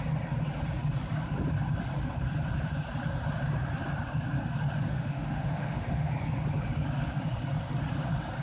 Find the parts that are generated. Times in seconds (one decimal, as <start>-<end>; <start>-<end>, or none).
4.9-6.1